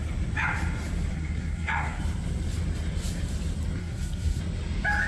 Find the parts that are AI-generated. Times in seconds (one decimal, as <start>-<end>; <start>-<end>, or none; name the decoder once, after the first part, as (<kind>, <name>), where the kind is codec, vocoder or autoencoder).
1.1-2.0 (codec, SNAC); 3.8-4.4